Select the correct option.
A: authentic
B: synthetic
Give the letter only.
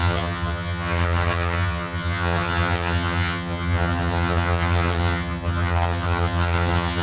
B